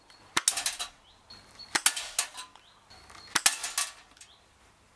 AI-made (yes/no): no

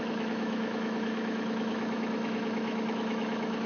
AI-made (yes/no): yes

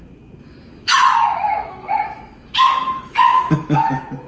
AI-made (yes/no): yes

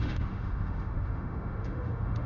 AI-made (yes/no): yes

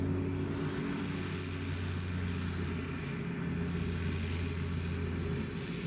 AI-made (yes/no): no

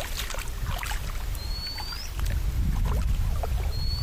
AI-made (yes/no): no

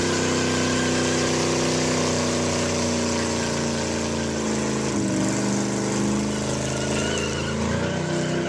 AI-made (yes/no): no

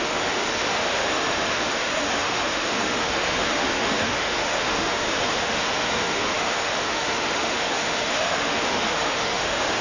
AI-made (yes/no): yes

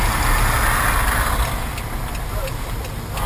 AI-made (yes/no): no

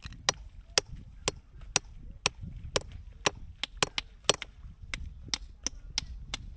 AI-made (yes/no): no